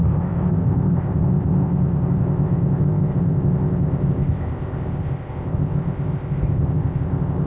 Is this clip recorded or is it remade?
remade